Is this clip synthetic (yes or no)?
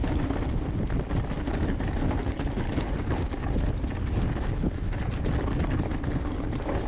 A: no